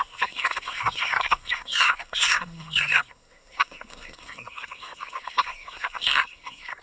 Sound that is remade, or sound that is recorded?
remade